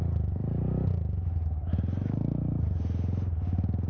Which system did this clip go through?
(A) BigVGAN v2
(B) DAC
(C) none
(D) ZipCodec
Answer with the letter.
C